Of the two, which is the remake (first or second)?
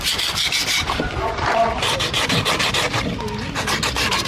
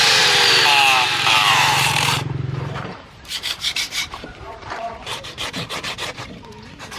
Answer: second